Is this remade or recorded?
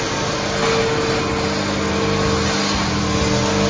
recorded